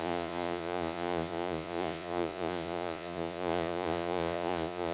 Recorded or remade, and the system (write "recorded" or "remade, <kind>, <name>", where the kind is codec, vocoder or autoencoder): remade, vocoder, Vocos